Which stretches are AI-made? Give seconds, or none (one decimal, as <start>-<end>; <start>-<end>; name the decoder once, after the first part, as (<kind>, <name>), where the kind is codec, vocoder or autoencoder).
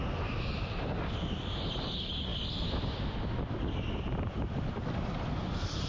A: none